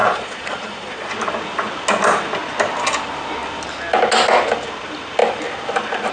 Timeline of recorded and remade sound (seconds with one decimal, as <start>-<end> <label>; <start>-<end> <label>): 0.0-1.1 remade; 1.1-6.1 recorded